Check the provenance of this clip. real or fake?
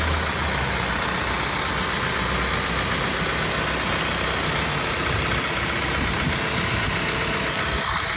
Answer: real